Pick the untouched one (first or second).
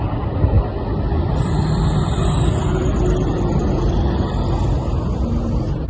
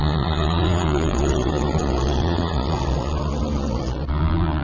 first